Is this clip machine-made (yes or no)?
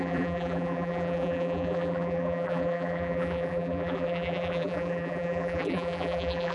yes